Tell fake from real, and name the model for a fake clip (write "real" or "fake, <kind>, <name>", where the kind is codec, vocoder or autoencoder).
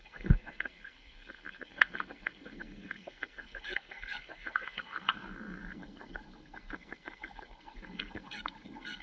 fake, codec, SNAC